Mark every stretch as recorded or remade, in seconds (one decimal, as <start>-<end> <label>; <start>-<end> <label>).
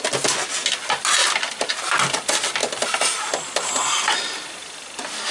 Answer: 0.0-5.3 recorded